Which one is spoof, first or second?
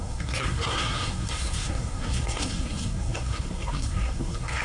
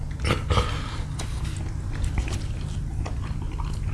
first